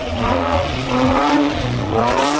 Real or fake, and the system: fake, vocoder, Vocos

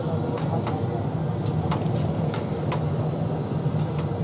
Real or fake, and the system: real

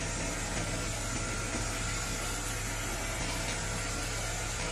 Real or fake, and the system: real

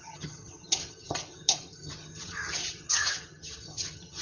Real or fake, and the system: fake, vocoder, HiFi-GAN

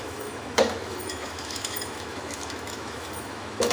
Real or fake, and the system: fake, autoencoder, DAC-VAE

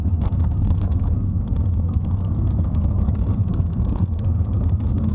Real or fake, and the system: fake, codec, SNAC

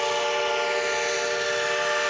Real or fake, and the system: real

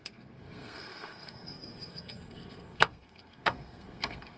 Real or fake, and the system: fake, codec, SNAC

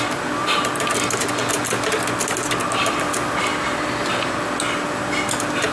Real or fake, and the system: real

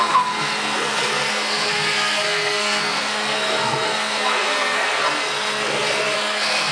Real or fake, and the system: fake, codec, SNAC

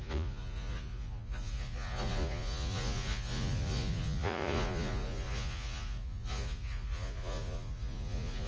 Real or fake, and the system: fake, vocoder, Vocos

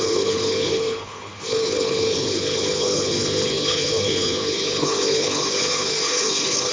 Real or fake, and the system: fake, codec, HILCodec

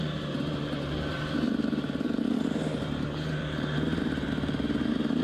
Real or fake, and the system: fake, vocoder, BigVGAN v2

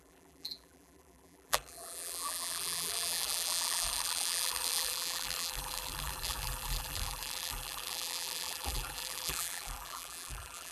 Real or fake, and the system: fake, vocoder, BigVGAN v2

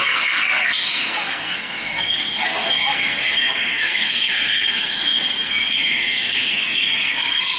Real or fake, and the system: fake, codec, SNAC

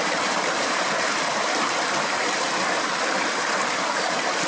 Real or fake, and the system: fake, vocoder, BigVGAN v2